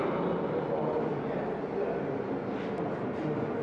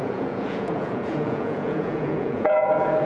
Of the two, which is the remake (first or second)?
second